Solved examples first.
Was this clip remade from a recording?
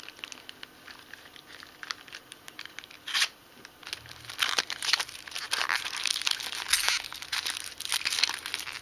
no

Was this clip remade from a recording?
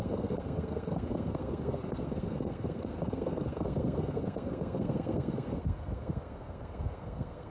yes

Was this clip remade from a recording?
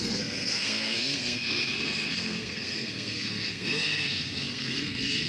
yes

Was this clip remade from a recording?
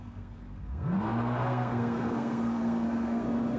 yes